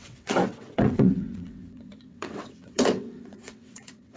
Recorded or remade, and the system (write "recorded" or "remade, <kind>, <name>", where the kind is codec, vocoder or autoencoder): remade, vocoder, WaveNeXt